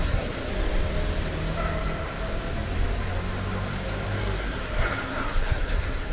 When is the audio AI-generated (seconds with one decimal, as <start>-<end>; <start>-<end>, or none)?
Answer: 0.0-0.5; 4.2-6.1